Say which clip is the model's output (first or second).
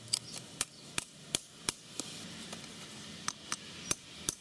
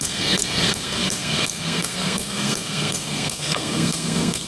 second